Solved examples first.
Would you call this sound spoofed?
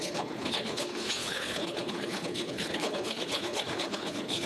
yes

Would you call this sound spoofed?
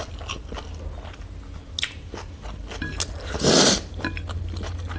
no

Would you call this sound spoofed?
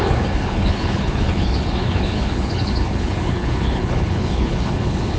yes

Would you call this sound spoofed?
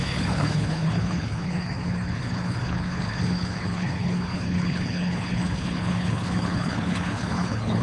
yes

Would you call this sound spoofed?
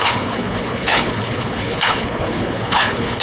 yes